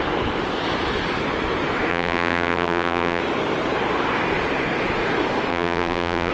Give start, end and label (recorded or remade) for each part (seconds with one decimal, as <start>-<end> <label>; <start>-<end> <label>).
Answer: 0.0-1.9 recorded; 1.9-3.2 remade; 3.2-5.5 recorded; 5.5-6.3 remade